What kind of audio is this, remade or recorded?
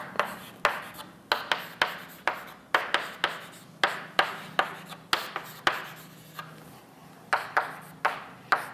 recorded